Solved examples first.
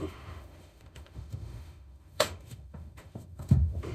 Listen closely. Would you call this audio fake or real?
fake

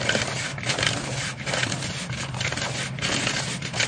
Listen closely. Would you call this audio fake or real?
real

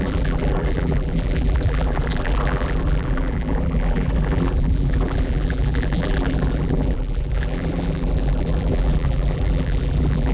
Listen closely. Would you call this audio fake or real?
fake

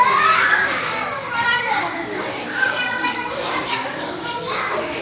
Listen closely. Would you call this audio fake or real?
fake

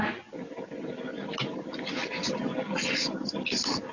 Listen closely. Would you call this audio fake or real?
real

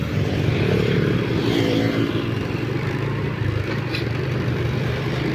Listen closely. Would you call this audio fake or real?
fake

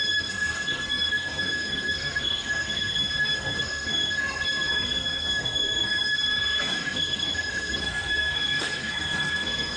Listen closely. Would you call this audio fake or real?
fake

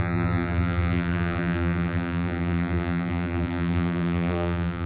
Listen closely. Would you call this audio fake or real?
fake